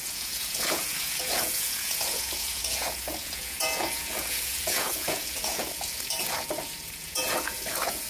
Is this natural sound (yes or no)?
no